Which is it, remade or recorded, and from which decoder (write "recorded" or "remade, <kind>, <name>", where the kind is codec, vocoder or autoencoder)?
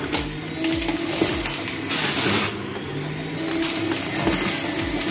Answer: recorded